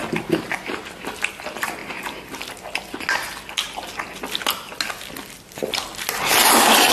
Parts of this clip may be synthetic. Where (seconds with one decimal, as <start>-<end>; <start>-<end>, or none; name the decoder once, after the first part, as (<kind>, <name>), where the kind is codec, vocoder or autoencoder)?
none